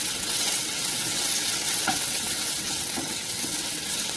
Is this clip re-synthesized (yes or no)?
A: yes